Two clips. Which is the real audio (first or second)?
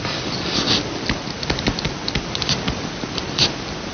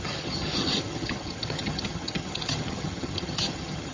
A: first